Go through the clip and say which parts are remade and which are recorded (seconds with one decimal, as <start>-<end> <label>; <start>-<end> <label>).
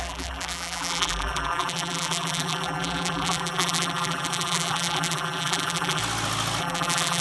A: 0.0-6.0 remade; 6.0-6.6 recorded; 6.6-7.2 remade